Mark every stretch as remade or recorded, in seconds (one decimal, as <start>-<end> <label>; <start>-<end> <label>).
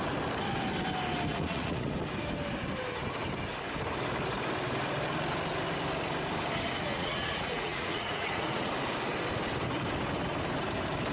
0.0-1.3 recorded; 1.3-1.9 remade; 1.9-6.9 recorded; 6.9-8.7 remade; 8.7-11.1 recorded